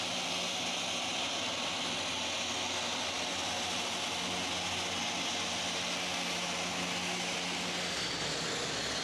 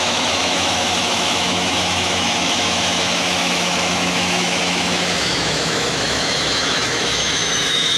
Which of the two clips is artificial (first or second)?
second